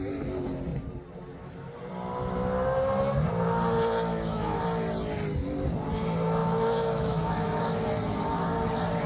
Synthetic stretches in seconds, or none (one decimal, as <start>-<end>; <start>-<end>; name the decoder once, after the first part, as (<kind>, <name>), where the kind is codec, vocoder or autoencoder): 4.1-4.6 (autoencoder, DAC-VAE); 6.4-7.6

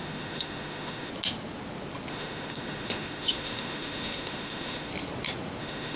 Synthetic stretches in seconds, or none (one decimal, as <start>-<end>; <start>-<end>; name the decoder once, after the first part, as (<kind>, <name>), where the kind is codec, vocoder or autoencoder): 0.0-1.1 (autoencoder, DAC-VAE); 2.1-4.9; 5.6-6.0

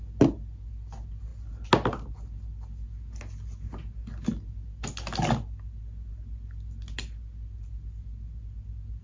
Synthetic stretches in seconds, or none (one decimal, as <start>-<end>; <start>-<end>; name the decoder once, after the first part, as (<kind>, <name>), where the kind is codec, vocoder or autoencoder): none

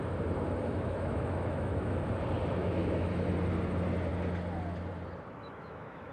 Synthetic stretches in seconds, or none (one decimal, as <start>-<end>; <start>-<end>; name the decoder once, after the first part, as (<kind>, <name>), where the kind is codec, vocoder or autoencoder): 0.6-2.1 (autoencoder, DAC-VAE); 2.6-3.3; 5.4-6.1

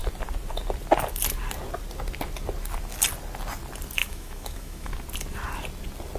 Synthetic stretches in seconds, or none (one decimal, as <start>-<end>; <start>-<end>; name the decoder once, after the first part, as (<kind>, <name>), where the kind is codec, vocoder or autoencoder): 4.0-4.9 (autoencoder, DAC-VAE)

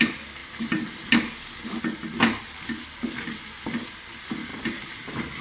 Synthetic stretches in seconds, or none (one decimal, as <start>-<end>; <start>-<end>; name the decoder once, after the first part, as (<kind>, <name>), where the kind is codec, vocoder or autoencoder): none

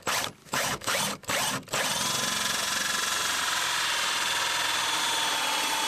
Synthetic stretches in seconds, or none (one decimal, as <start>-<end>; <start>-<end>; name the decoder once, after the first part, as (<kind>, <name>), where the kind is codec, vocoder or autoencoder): 0.4-1.0 (autoencoder, DAC-VAE)

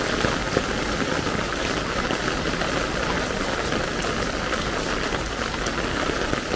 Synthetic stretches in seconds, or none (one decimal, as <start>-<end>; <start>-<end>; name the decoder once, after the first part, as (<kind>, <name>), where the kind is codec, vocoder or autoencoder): none